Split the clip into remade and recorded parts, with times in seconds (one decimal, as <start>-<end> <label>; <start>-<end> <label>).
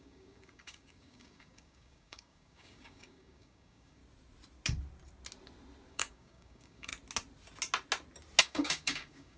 0.0-4.0 remade; 4.0-5.9 recorded; 5.9-6.9 remade; 6.9-8.4 recorded; 8.4-9.4 remade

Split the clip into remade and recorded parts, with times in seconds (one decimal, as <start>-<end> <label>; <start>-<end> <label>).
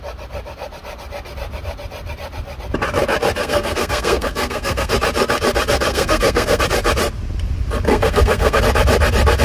0.0-3.4 recorded; 3.4-4.9 remade; 4.9-5.9 recorded; 5.9-6.6 remade; 6.6-7.9 recorded; 7.9-8.6 remade; 8.6-9.4 recorded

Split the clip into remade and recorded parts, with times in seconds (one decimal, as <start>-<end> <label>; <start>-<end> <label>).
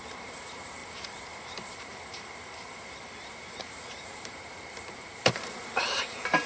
0.0-6.5 remade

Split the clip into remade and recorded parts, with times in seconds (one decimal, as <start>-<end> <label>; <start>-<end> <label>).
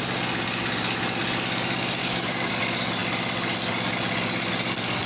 0.0-2.0 recorded; 2.0-2.5 remade; 2.5-5.1 recorded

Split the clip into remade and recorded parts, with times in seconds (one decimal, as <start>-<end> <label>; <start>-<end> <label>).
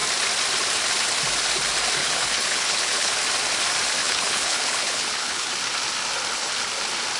0.0-2.0 recorded; 2.0-3.1 remade; 3.1-4.0 recorded; 4.0-5.5 remade; 5.5-7.2 recorded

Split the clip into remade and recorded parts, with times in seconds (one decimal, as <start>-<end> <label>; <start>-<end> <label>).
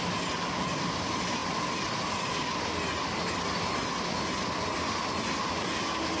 0.0-6.2 recorded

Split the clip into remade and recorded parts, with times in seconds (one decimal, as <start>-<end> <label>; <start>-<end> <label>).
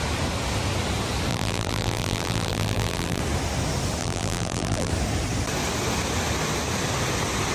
0.0-1.3 recorded; 1.3-3.2 remade; 3.2-4.0 recorded; 4.0-4.9 remade; 4.9-7.5 recorded